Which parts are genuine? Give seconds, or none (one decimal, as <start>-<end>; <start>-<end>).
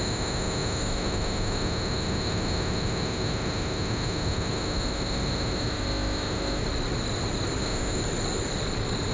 6.6-7.6; 8.0-9.1